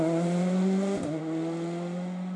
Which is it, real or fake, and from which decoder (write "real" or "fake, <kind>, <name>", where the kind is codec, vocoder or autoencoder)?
real